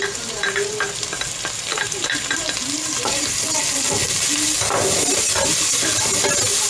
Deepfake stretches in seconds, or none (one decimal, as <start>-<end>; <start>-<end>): 1.7-3.6